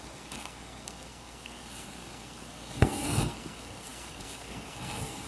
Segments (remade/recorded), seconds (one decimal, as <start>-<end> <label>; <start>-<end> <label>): 0.0-5.3 remade